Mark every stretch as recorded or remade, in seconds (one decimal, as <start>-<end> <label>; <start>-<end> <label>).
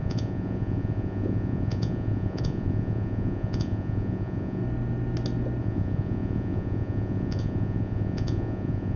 0.0-4.6 remade; 4.6-5.6 recorded; 5.6-9.0 remade